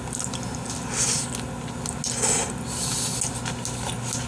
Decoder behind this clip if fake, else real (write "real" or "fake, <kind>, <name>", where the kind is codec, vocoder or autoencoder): real